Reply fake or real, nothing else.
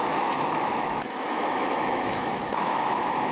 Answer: fake